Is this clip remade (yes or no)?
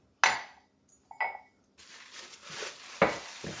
no